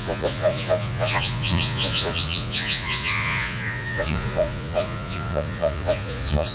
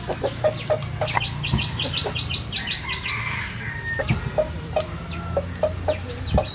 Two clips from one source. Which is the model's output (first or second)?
first